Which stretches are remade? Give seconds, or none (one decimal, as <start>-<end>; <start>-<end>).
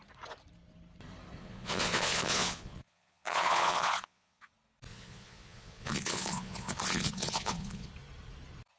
1.4-4.5; 4.9-7.9